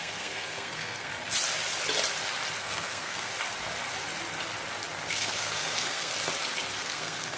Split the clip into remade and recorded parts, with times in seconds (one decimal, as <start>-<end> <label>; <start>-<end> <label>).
0.0-1.1 remade; 1.1-2.6 recorded; 2.6-3.3 remade; 3.3-5.1 recorded; 5.1-6.1 remade; 6.1-6.8 recorded; 6.8-7.4 remade